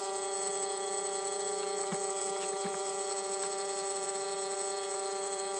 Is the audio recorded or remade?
remade